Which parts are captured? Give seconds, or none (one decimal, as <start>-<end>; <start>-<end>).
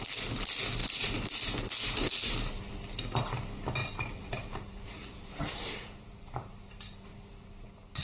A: 0.0-2.1; 2.7-3.8; 7.1-8.0